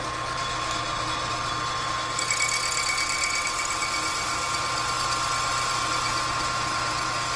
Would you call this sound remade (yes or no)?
no